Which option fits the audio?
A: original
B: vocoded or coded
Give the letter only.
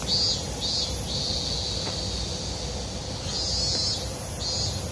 A